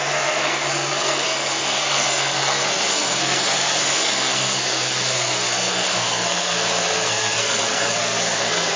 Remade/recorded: remade